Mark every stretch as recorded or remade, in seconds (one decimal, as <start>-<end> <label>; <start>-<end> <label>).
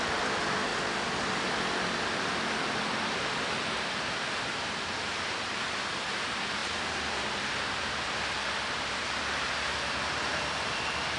0.0-0.7 remade; 0.7-2.0 recorded; 2.0-11.2 remade